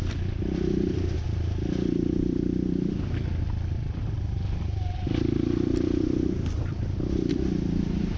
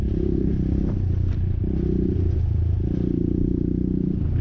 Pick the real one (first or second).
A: second